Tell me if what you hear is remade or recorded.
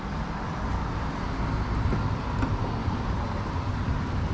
recorded